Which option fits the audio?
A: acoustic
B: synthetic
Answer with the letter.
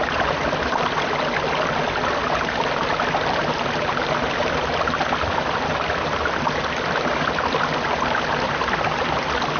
A